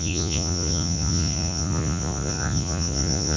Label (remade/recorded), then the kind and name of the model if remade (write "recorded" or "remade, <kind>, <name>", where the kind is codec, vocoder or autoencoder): remade, vocoder, Vocos